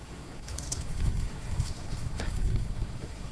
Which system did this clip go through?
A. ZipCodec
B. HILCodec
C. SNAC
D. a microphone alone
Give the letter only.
C